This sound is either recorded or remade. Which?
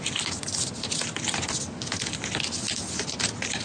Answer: recorded